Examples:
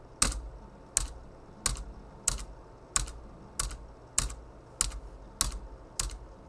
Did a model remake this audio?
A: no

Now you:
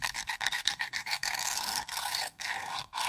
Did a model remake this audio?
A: yes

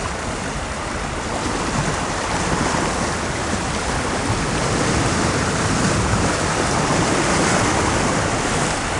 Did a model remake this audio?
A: no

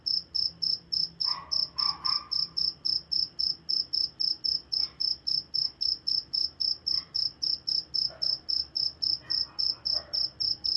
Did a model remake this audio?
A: no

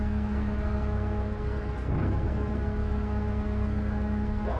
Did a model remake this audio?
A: yes